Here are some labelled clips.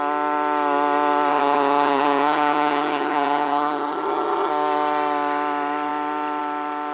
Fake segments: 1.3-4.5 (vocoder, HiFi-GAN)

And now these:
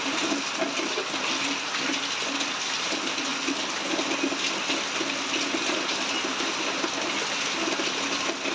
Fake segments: none

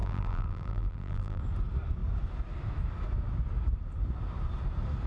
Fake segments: 0.0-1.4 (vocoder, BigVGAN v2)

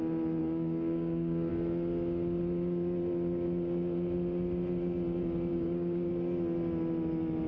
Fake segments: 0.4-1.5 (codec, DAC); 5.5-6.1

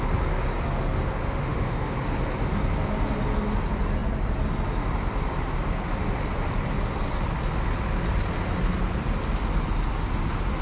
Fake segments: 1.2-1.9 (autoencoder, DAC-VAE)

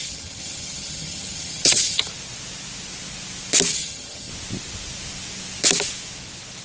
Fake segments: 0.0-2.1 (vocoder, HiFi-GAN); 3.7-4.3